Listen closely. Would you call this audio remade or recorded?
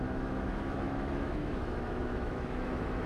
remade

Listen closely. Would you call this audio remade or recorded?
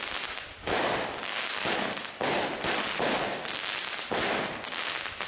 recorded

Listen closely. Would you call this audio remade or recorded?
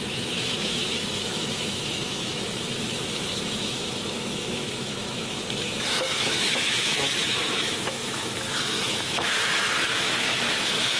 remade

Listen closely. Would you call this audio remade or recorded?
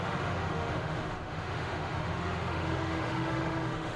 remade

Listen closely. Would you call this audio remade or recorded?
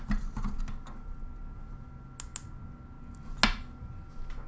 recorded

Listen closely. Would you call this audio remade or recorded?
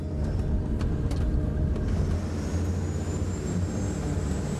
recorded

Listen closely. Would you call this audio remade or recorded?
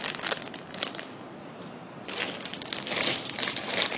recorded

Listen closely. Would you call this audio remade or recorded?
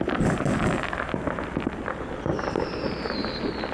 recorded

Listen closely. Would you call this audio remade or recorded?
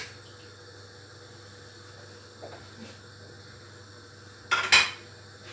recorded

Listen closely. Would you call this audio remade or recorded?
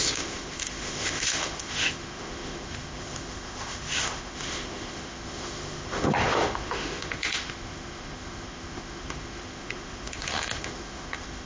remade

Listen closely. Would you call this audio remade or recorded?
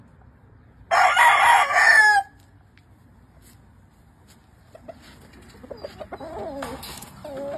recorded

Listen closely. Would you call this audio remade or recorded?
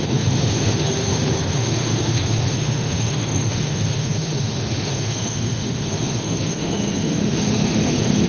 remade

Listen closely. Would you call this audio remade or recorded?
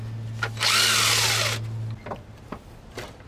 recorded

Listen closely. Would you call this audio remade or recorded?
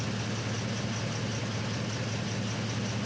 recorded